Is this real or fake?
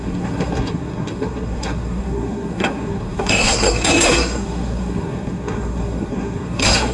fake